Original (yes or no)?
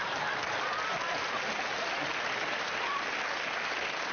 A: yes